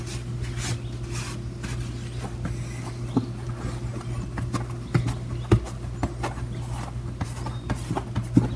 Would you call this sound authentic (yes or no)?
yes